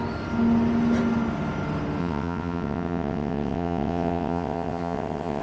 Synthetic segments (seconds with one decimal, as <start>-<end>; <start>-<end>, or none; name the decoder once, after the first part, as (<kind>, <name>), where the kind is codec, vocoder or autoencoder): 2.0-5.4 (vocoder, WaveNeXt)